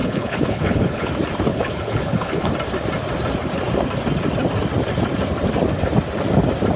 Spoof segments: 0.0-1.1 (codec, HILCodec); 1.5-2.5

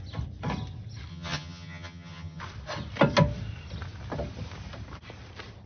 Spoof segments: 1.1-2.4 (vocoder, HiFi-GAN)

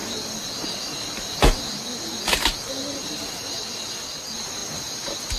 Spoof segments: none

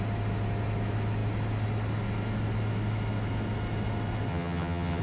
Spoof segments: 4.3-5.0 (vocoder, HiFi-GAN)

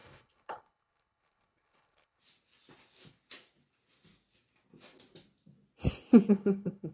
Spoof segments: 0.0-2.2 (codec, HILCodec); 6.3-6.9

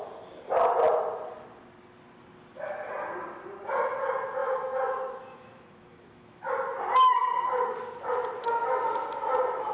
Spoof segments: 4.4-6.5 (autoencoder, DAC-VAE)